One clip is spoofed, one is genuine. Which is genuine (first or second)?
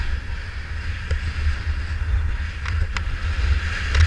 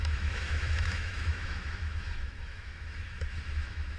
first